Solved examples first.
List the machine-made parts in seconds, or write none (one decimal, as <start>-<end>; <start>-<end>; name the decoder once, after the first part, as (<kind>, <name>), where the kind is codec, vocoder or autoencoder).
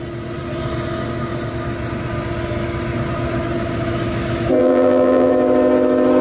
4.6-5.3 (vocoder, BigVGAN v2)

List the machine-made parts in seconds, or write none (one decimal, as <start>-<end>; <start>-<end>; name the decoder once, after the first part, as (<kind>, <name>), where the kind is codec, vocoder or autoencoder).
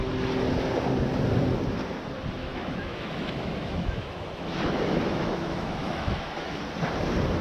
2.4-6.6 (autoencoder, DAC-VAE)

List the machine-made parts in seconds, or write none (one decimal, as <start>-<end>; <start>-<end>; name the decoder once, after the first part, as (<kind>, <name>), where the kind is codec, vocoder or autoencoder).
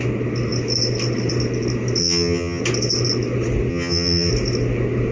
2.0-2.6 (vocoder, HiFi-GAN); 3.7-4.3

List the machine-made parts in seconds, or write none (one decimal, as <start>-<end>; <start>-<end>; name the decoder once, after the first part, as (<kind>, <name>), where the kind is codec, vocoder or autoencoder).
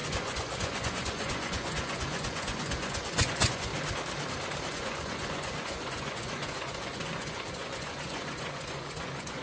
0.0-3.7 (vocoder, Vocos); 4.7-9.4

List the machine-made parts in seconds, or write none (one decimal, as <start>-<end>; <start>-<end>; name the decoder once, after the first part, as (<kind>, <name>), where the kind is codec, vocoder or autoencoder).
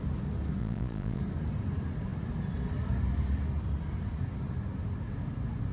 0.6-1.2 (vocoder, Vocos)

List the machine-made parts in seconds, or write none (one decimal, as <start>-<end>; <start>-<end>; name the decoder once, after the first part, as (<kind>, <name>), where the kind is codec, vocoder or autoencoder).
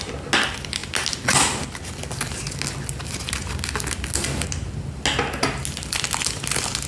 none